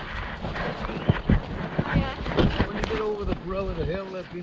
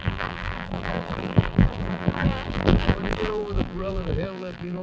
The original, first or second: first